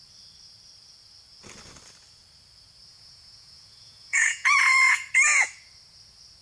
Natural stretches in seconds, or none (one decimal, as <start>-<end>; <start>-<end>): 0.0-2.9; 5.1-6.4